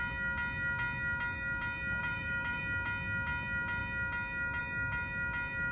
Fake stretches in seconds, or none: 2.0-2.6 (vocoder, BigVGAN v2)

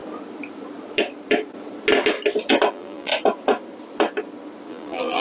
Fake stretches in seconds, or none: 2.7-3.1 (vocoder, BigVGAN v2); 4.7-5.2

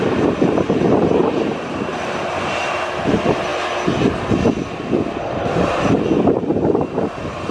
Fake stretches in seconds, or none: 0.0-3.5 (vocoder, BigVGAN v2); 5.3-6.5